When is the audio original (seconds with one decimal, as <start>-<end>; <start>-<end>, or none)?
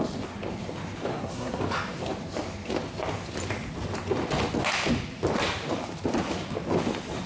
0.0-1.1; 1.6-7.3